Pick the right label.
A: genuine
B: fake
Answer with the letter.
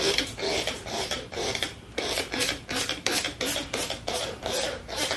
B